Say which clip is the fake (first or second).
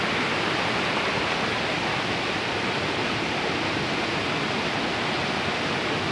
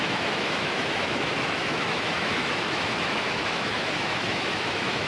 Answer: second